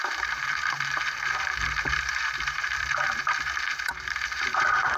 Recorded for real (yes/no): no